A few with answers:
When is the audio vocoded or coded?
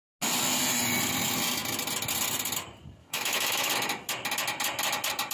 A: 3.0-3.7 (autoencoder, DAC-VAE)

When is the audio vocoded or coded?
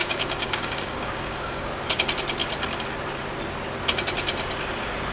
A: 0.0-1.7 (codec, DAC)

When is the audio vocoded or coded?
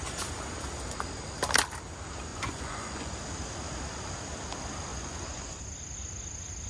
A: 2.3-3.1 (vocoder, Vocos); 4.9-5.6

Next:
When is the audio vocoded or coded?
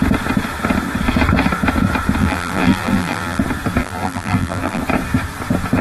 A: 2.2-3.4 (vocoder, BigVGAN v2); 3.8-4.8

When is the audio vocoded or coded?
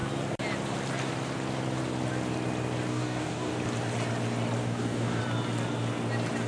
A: 2.9-3.6 (codec, DAC); 4.6-5.2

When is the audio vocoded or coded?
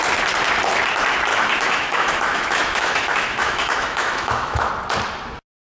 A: 1.3-4.7 (autoencoder, DAC-VAE)